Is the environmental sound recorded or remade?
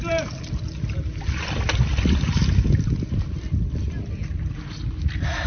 recorded